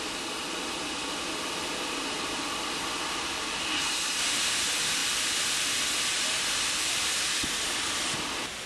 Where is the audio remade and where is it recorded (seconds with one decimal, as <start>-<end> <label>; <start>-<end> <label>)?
0.0-8.7 recorded